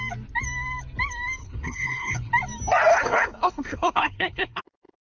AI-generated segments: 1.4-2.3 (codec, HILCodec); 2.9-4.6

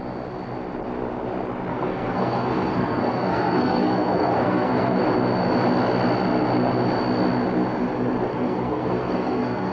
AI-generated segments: 1.7-5.0 (codec, SNAC); 8.3-9.7

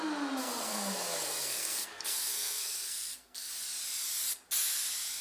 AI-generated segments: 0.4-3.5 (codec, SNAC)